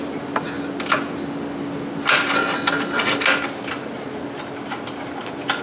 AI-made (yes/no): no